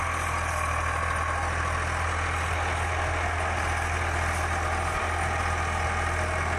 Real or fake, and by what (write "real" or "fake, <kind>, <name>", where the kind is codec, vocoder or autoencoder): real